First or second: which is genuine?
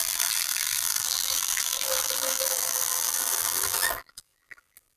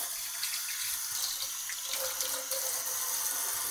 second